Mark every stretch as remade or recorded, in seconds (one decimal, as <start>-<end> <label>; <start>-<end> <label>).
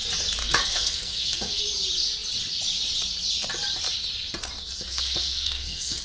0.0-0.4 recorded; 0.4-1.6 remade; 1.6-4.6 recorded; 4.6-6.0 remade